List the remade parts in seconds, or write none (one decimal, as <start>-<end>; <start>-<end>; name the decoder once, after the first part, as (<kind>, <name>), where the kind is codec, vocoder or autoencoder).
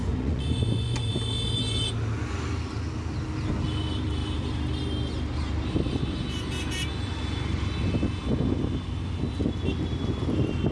0.0-1.1 (vocoder, Vocos)